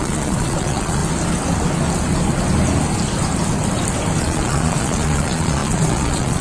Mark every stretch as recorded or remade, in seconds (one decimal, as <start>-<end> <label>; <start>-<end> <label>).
0.0-1.0 remade; 1.0-4.2 recorded; 4.2-6.4 remade